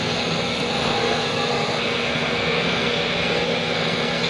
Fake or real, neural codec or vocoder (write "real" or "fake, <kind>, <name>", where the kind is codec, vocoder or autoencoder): fake, codec, SNAC